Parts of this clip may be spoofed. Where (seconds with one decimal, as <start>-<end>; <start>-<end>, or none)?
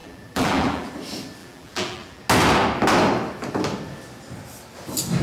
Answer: 0.0-0.9; 1.4-2.2